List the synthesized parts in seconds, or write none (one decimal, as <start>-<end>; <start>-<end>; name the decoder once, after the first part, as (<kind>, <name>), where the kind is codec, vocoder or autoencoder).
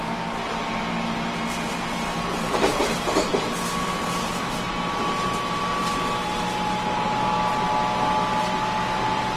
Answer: none